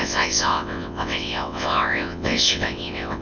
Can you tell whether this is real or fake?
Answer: fake